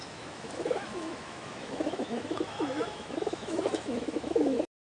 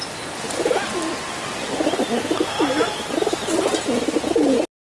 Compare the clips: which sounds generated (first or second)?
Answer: first